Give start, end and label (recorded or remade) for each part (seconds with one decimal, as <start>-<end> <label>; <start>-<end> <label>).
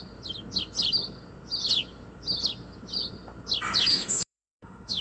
0.0-3.9 recorded; 3.9-5.0 remade